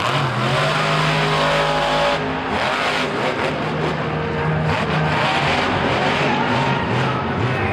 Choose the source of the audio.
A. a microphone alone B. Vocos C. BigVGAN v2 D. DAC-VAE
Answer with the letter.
A